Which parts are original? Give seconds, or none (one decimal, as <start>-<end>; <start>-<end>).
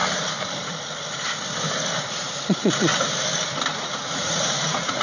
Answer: 0.0-2.1; 2.9-3.8